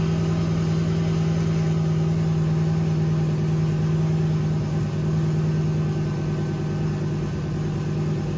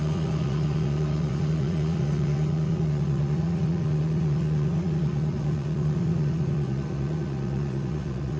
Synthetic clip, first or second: second